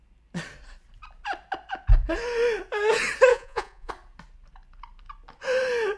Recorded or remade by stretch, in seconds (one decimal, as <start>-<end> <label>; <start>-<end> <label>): 0.0-3.3 recorded; 3.3-3.9 remade; 3.9-6.0 recorded